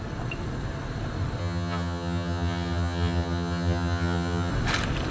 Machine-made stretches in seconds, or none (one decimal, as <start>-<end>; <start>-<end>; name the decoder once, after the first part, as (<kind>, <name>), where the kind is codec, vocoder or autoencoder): 1.4-4.5 (vocoder, HiFi-GAN)